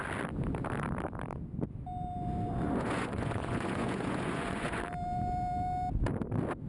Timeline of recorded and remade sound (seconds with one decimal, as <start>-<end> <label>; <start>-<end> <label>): 0.0-2.5 recorded; 2.5-4.8 remade; 4.8-6.7 recorded